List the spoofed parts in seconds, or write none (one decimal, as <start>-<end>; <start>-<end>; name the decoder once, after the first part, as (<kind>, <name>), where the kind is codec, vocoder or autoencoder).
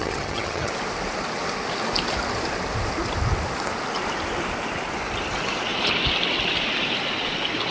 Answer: 0.0-0.7 (vocoder, HiFi-GAN)